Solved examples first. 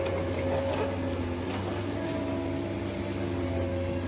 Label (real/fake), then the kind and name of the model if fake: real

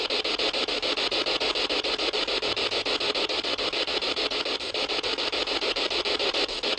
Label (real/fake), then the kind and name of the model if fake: real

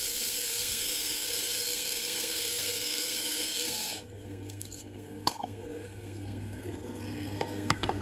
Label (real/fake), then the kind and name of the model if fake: fake, codec, SNAC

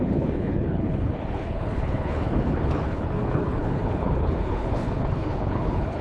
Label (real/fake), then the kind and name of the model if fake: fake, codec, HILCodec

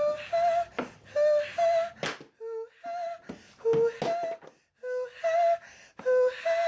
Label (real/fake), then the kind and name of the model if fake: real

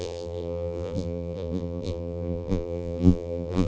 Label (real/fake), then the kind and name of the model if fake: fake, vocoder, BigVGAN v2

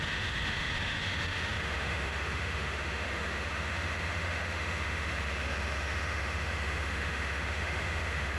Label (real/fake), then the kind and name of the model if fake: fake, autoencoder, DAC-VAE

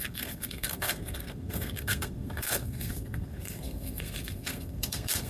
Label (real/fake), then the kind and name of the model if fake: fake, codec, SNAC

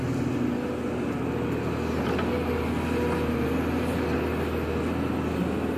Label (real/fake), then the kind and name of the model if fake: real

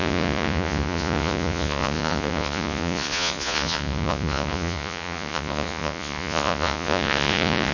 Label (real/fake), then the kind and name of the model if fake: fake, vocoder, Vocos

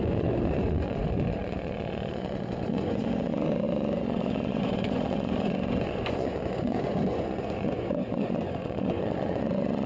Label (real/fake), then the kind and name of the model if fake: fake, vocoder, Vocos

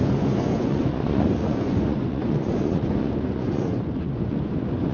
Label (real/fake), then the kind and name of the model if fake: fake, vocoder, Vocos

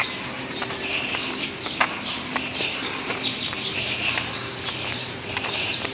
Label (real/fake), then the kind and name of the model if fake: fake, vocoder, BigVGAN v2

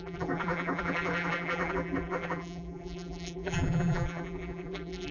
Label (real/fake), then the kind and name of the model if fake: fake, vocoder, BigVGAN v2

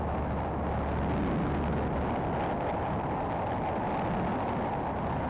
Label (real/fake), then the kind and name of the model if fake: real